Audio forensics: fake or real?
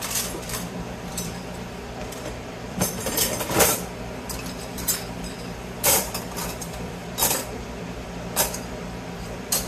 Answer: fake